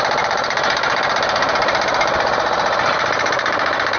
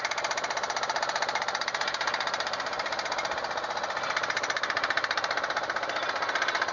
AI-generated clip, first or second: first